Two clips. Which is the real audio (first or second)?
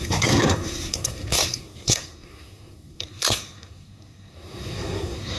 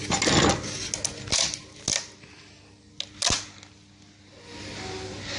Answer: second